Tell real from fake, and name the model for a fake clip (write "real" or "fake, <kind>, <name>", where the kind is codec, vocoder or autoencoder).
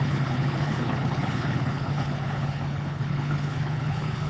fake, codec, HILCodec